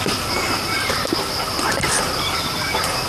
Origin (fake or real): real